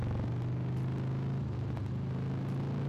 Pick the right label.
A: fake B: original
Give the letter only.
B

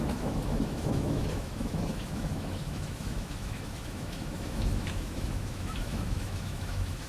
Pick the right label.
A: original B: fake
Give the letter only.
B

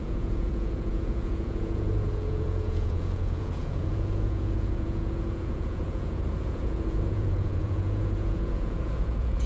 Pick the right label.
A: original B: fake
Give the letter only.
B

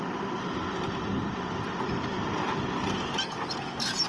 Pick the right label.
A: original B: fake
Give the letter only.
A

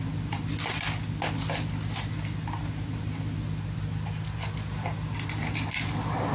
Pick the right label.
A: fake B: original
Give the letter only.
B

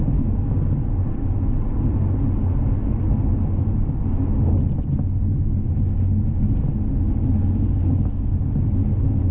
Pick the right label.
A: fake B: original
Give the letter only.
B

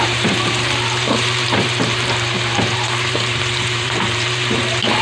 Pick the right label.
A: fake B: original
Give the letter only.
A